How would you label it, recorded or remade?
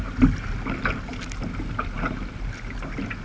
recorded